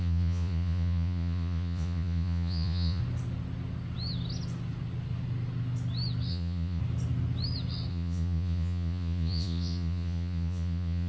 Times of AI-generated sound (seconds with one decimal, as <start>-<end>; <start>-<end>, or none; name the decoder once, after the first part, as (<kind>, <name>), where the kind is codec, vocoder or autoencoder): 0.0-3.0 (vocoder, Vocos); 6.3-6.8; 7.9-11.1